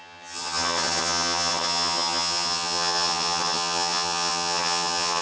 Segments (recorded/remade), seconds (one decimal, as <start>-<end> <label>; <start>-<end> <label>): 0.0-5.2 remade